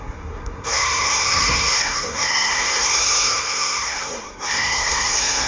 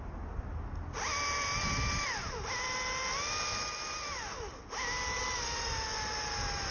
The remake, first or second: first